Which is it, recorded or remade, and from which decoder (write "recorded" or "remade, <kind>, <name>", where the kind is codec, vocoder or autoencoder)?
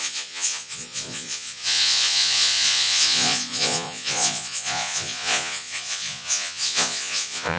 remade, vocoder, Vocos